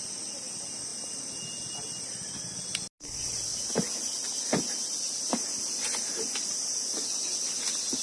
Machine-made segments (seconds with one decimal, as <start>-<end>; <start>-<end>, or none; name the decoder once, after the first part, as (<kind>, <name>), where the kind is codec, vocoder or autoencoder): none